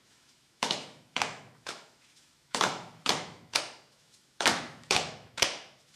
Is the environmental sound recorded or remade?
remade